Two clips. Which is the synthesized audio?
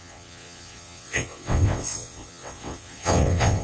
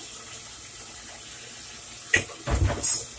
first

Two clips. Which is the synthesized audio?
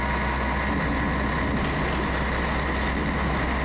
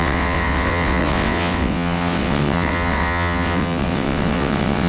second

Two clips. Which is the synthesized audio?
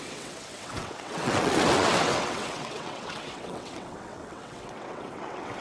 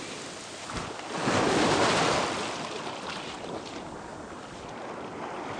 first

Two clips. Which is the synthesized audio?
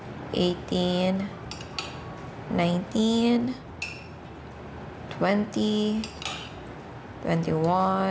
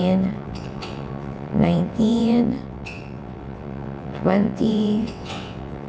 second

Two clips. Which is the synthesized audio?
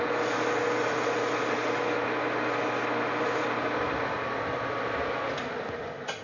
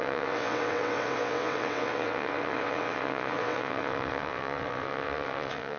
second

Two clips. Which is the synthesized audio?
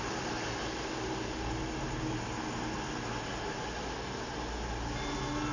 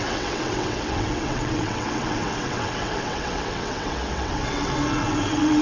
second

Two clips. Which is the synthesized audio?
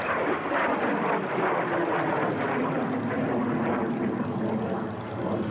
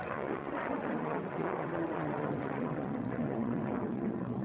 second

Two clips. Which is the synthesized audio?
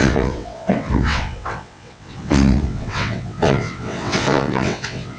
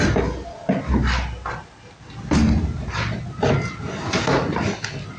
first